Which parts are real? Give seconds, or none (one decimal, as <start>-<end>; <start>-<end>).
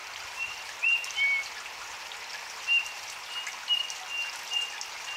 0.5-5.2